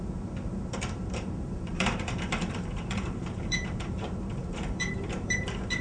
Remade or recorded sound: remade